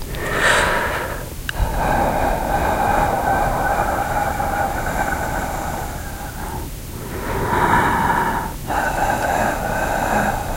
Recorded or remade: recorded